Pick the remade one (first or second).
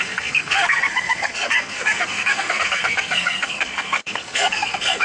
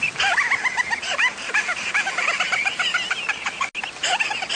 first